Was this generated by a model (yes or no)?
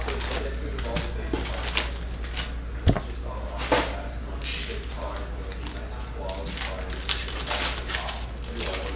no